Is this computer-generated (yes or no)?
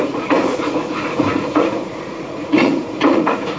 yes